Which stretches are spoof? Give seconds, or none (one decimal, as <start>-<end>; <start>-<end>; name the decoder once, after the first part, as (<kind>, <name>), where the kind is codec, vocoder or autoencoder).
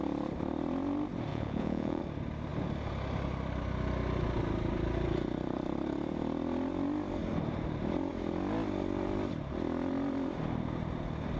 1.3-2.0 (vocoder, Vocos)